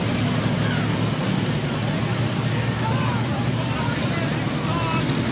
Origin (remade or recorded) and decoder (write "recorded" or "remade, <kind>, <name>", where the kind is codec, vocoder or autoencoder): recorded